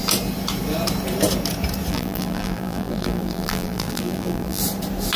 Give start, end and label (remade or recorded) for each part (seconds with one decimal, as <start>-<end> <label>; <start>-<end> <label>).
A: 0.0-1.9 recorded; 1.9-4.6 remade; 4.6-5.2 recorded